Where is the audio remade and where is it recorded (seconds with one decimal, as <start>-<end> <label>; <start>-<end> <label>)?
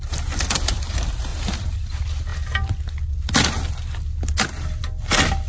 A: 0.0-1.3 recorded; 1.3-1.9 remade; 1.9-5.5 recorded